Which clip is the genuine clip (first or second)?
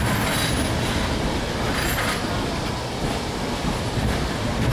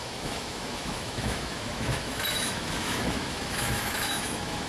first